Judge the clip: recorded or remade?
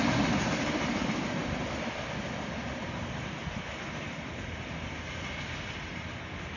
recorded